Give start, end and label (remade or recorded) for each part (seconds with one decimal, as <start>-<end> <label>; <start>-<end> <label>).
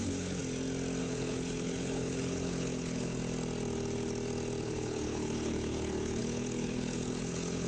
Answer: 0.0-0.4 remade; 0.4-1.0 recorded; 1.0-3.2 remade; 3.2-4.6 recorded; 4.6-7.7 remade